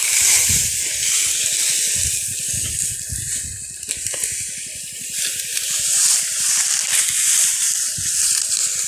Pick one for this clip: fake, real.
real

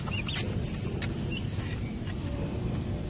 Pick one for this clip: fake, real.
real